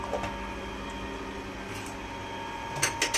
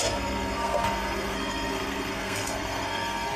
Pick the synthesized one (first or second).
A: second